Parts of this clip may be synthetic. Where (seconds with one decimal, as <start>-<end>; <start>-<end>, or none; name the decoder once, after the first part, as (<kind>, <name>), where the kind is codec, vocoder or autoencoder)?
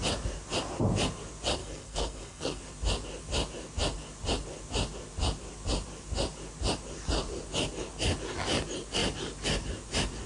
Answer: 1.6-2.6 (codec, SNAC)